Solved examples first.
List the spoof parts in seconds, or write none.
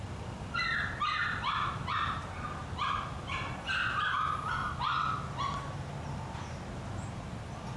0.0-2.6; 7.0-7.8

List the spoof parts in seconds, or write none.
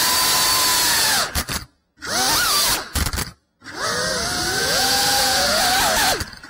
0.7-1.3; 4.6-5.6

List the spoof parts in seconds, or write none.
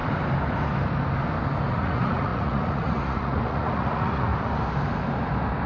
1.7-4.3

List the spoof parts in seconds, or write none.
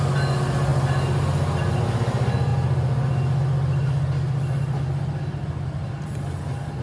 none